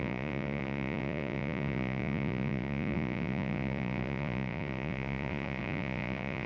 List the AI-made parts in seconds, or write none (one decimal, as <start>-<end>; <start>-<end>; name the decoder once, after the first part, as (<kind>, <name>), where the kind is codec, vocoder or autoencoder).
0.0-6.5 (vocoder, Vocos)